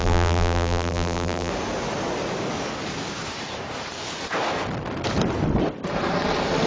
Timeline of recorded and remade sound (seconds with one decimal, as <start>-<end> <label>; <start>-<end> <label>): 0.0-1.5 remade; 1.5-6.7 recorded